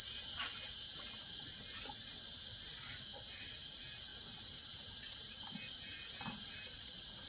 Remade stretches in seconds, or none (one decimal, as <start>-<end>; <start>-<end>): none